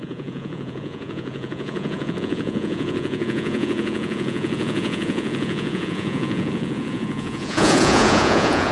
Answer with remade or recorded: remade